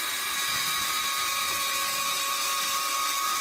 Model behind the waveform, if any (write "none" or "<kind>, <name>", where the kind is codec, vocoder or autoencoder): vocoder, BigVGAN v2